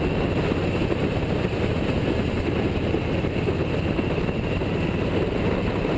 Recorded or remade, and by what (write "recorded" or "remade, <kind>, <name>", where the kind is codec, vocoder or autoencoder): recorded